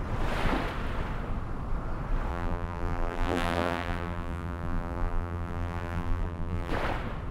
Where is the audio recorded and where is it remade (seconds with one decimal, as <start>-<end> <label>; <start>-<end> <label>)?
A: 0.0-2.3 recorded; 2.3-6.7 remade; 6.7-7.3 recorded